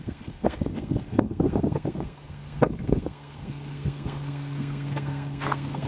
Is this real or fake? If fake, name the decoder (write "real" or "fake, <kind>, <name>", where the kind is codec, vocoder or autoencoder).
fake, codec, SNAC